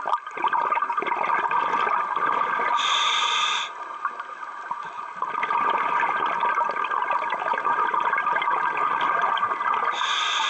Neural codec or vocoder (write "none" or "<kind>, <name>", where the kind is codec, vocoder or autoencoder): none